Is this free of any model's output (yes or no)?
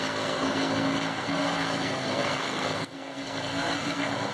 no